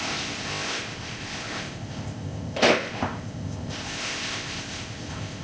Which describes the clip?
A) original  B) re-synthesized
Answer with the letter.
B